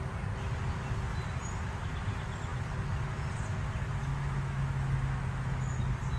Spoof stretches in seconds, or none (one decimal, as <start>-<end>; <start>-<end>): 4.1-5.8